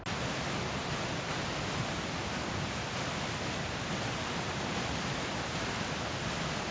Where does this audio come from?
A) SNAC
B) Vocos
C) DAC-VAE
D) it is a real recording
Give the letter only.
D